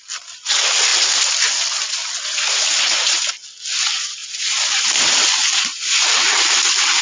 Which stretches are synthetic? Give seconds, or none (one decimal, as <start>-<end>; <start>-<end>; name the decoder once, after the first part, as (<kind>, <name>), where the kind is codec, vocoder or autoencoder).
4.2-6.1 (vocoder, BigVGAN v2)